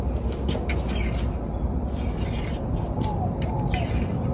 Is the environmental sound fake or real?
real